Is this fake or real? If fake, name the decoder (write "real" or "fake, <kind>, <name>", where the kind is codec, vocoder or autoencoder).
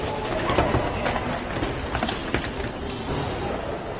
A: real